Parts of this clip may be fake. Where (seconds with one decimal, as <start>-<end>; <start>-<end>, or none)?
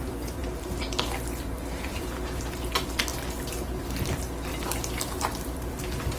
0.0-0.4; 1.8-3.1; 3.8-4.5; 5.0-6.2